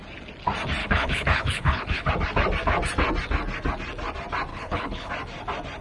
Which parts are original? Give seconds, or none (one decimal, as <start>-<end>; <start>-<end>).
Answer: 0.0-0.8; 2.1-4.5; 5.1-5.8

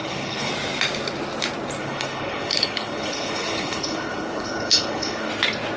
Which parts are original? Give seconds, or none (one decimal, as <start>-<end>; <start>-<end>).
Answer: 0.5-1.8; 5.3-5.8

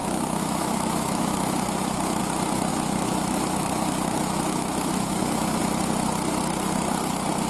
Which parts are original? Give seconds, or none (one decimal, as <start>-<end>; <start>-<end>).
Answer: 2.2-2.7; 5.6-7.5

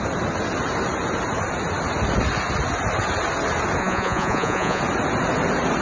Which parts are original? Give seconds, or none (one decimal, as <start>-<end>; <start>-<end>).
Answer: 0.0-3.8; 4.8-5.8

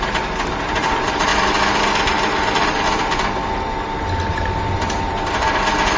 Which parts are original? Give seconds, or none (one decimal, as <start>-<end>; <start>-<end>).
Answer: 1.3-4.7

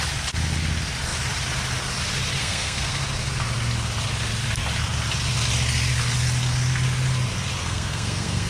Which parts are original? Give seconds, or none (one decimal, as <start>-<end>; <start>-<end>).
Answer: 0.0-2.4; 2.9-7.6

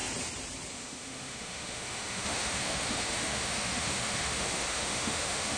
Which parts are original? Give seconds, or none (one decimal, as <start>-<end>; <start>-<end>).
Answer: 0.0-0.7

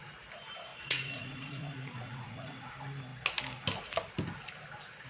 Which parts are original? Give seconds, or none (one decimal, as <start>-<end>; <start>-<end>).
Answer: 0.0-0.7; 2.7-5.1